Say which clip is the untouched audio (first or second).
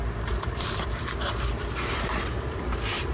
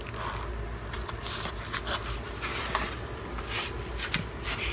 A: second